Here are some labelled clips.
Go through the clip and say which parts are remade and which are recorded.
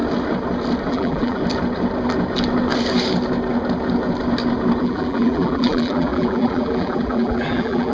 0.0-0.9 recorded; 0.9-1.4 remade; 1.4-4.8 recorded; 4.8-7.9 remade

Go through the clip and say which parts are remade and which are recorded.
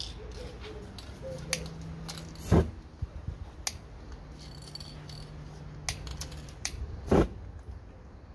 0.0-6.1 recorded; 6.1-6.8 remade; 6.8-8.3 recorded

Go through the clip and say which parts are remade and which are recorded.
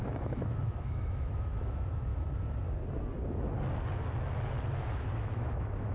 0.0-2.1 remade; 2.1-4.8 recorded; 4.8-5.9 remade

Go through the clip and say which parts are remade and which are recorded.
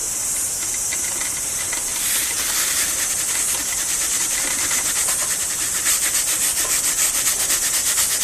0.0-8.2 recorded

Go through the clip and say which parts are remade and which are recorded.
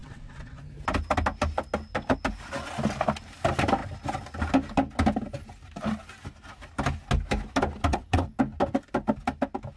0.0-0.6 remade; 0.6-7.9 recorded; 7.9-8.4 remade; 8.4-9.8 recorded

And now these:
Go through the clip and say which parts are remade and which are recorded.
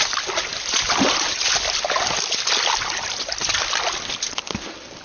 0.0-5.0 recorded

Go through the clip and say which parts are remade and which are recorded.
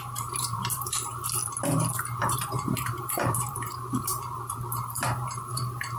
0.0-1.4 remade; 1.4-2.2 recorded; 2.2-6.0 remade